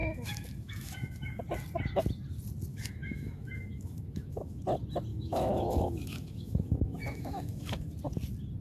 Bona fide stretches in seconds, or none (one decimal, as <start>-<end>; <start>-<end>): 1.4-2.7; 4.6-5.1; 7.9-8.6